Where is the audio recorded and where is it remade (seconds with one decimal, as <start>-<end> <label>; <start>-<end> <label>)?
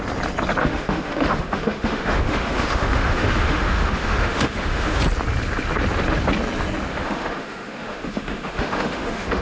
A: 0.0-0.6 recorded; 0.6-5.0 remade; 5.0-6.9 recorded; 6.9-9.4 remade